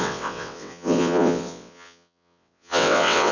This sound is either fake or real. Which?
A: fake